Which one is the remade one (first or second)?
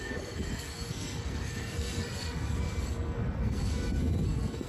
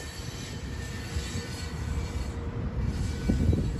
first